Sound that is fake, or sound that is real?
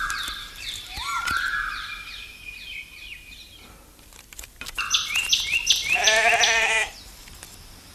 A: fake